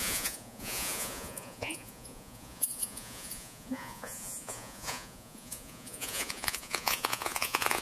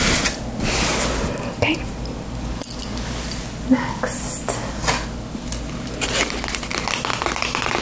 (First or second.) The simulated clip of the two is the first